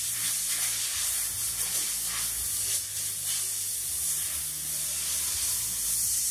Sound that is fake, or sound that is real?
real